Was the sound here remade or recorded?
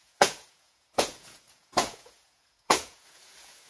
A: remade